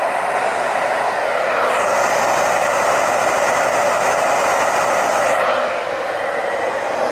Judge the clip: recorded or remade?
recorded